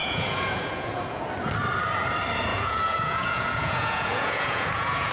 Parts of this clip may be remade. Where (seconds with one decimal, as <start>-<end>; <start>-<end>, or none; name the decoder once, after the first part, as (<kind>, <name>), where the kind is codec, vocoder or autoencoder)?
0.0-1.2 (vocoder, Vocos); 2.5-5.1